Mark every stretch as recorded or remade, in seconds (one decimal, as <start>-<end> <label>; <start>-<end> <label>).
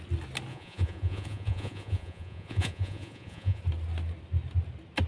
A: 0.0-0.5 recorded; 0.5-3.6 remade; 3.6-5.1 recorded